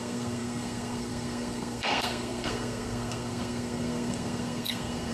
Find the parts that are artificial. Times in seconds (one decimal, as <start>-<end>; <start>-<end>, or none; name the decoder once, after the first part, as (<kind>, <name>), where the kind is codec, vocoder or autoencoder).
0.0-5.1 (codec, SNAC)